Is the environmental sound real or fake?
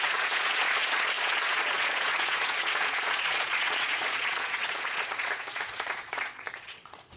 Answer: fake